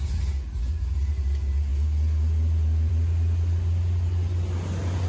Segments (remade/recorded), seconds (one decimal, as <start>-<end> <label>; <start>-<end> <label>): 0.0-5.1 recorded